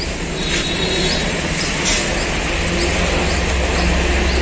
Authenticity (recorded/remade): recorded